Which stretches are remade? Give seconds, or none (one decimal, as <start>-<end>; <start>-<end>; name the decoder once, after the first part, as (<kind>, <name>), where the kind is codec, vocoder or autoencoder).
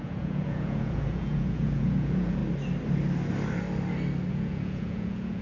0.0-2.4 (vocoder, Vocos); 4.3-5.4